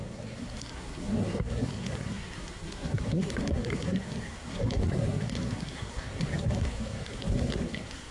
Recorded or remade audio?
remade